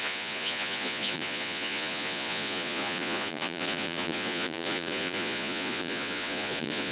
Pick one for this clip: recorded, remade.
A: remade